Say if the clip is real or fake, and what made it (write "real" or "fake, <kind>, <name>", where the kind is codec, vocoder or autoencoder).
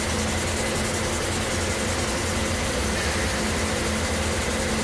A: real